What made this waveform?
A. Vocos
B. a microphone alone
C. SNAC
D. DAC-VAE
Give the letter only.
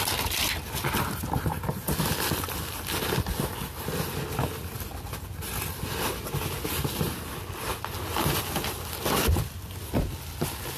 B